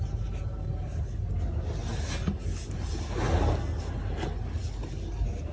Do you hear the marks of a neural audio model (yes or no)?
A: no